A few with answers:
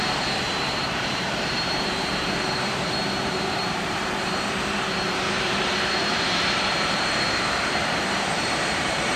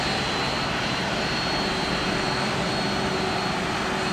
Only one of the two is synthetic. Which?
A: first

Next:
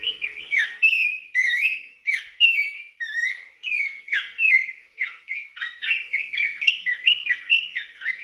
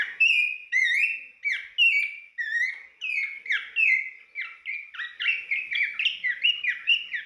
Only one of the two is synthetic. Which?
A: first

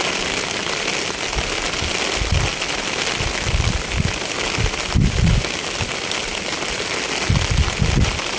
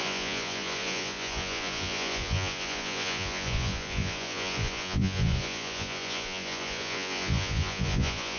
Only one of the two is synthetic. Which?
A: second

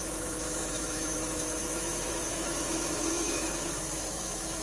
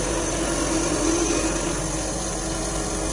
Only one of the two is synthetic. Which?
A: first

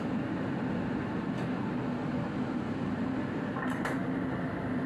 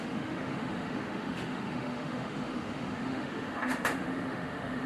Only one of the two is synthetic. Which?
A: second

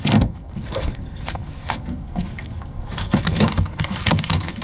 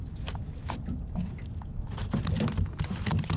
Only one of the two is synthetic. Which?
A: first